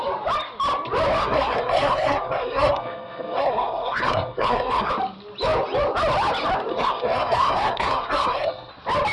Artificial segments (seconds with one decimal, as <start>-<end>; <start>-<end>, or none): 1.2-4.9; 6.7-8.7